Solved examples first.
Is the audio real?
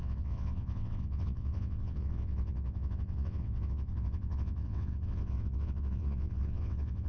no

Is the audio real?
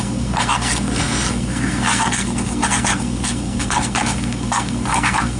no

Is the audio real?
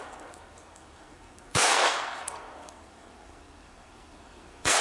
no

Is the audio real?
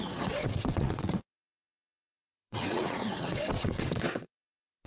no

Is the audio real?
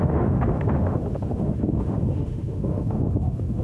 no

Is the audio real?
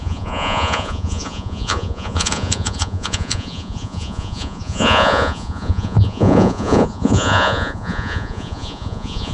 no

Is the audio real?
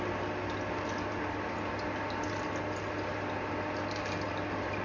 yes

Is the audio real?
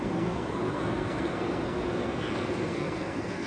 no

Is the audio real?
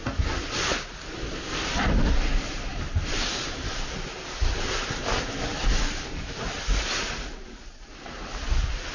yes